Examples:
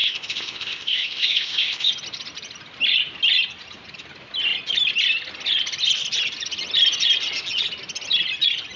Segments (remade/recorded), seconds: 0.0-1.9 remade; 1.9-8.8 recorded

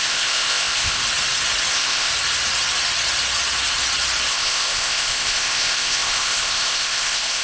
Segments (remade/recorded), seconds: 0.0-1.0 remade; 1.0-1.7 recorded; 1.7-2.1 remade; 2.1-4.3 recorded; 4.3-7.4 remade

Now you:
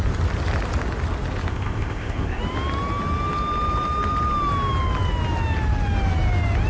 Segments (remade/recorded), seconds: 0.0-1.5 recorded; 1.5-2.4 remade; 2.4-6.7 recorded

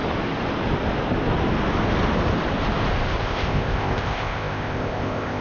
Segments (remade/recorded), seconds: 0.0-3.2 recorded; 3.2-5.4 remade

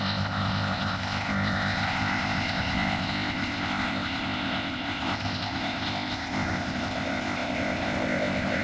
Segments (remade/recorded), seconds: 0.0-8.6 remade